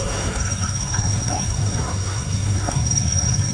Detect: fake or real fake